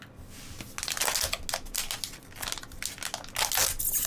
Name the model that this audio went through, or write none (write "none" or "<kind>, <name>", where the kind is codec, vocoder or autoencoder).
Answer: none